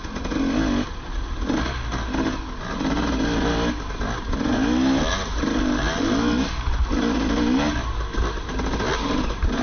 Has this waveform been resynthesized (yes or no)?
no